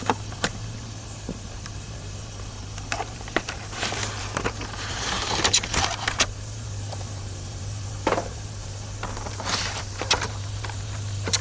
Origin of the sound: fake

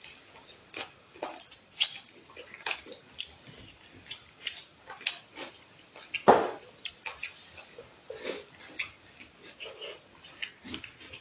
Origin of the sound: real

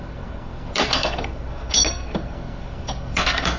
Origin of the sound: fake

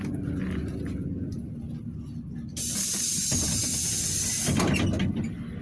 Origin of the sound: real